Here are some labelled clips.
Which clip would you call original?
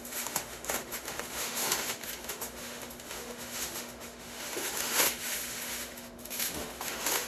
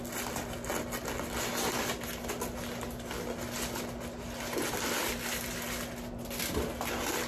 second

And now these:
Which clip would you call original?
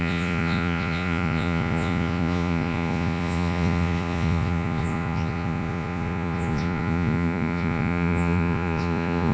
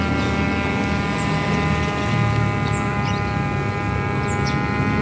second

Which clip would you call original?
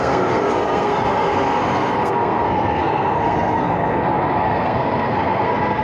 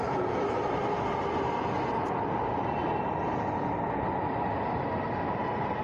second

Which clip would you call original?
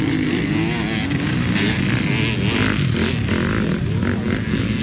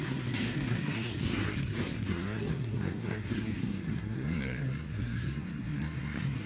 first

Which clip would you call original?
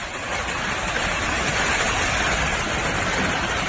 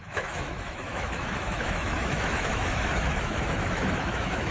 first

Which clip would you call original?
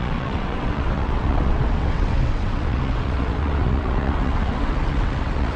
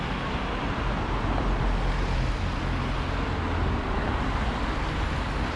second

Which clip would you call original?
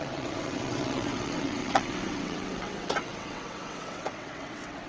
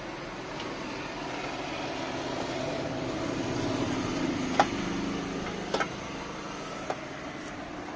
second